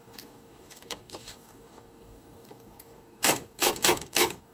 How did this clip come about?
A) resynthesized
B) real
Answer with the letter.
A